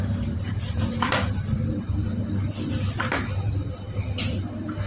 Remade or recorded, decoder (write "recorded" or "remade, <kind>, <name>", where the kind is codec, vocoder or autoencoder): remade, vocoder, BigVGAN v2